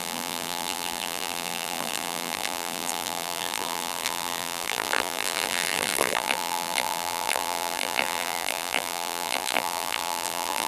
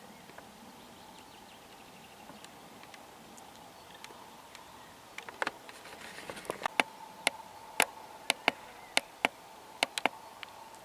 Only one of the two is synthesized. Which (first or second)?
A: first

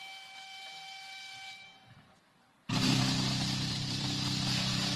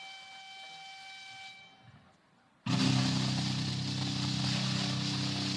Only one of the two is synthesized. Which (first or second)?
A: first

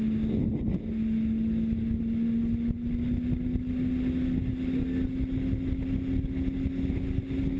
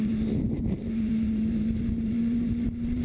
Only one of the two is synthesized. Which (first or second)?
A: second